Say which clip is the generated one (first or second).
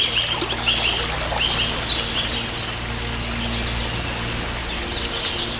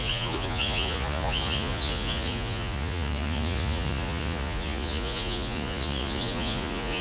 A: second